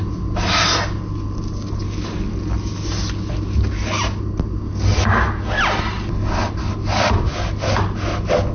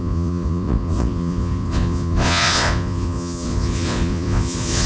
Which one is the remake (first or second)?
second